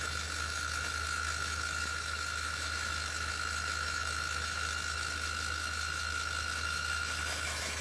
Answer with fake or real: fake